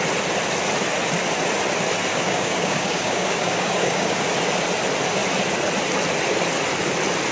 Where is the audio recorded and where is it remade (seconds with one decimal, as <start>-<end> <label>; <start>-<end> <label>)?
0.0-2.1 recorded; 2.1-4.2 remade; 4.2-7.3 recorded